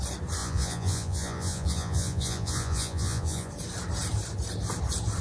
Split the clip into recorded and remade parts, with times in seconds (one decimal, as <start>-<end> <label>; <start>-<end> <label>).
0.0-0.4 recorded; 0.4-3.5 remade; 3.5-5.2 recorded